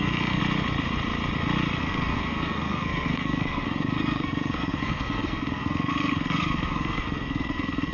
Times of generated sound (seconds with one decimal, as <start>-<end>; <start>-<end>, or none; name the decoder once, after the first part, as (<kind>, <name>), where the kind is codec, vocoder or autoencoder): 0.0-0.4 (codec, SNAC); 1.8-7.9